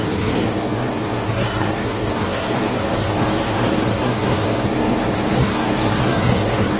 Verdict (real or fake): fake